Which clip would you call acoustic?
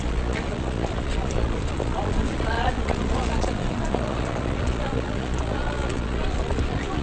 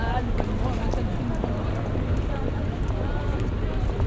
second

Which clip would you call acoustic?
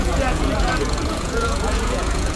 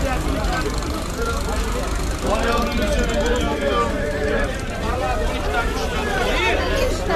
second